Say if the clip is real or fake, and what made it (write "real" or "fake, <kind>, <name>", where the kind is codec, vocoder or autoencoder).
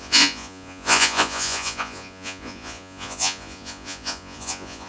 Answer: fake, vocoder, Vocos